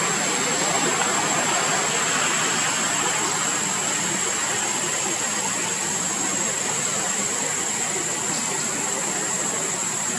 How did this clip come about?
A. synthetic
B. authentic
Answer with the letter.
B